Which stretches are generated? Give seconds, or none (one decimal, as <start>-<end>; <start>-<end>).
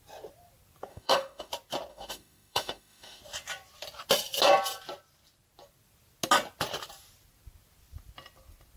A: 0.9-1.5; 1.9-3.2